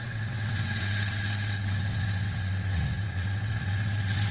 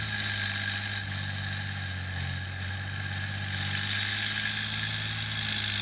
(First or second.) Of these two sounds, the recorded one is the second